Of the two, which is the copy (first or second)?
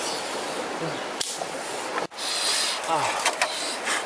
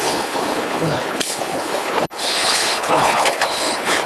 second